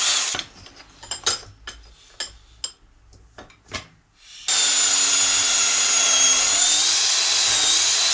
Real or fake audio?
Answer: real